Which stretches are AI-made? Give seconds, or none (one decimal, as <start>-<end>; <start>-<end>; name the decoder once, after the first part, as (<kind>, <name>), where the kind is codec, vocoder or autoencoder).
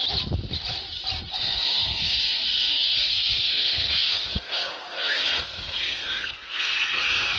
1.3-7.4 (codec, SNAC)